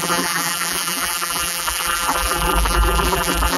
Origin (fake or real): fake